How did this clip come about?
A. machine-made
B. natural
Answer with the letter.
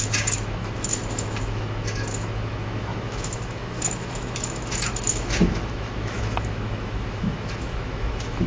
A